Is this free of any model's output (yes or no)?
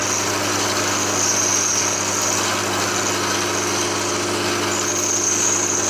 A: yes